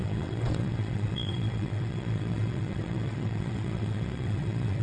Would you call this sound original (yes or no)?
no